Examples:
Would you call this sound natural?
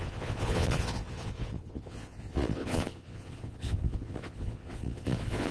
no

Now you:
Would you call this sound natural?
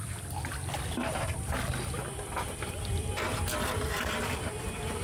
yes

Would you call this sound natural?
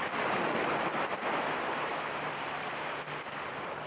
yes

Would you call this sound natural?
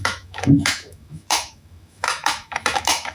no